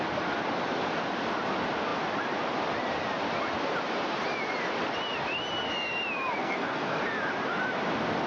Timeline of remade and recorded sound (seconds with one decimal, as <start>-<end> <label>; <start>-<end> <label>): 0.0-6.4 recorded; 6.4-7.0 remade; 7.0-8.3 recorded